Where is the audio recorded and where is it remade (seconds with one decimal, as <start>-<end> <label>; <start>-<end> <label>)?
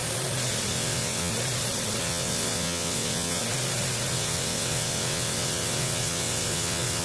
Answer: 0.0-0.7 recorded; 0.7-1.3 remade; 1.3-2.0 recorded; 2.0-3.4 remade; 3.4-4.1 recorded; 4.1-7.0 remade